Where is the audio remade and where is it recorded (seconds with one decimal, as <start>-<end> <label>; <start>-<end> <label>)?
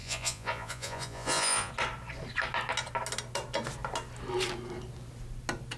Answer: 0.0-1.7 remade; 1.7-5.8 recorded